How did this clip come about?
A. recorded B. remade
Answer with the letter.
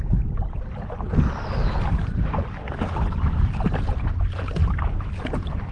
A